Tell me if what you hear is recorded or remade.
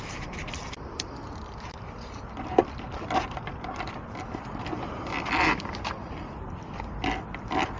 recorded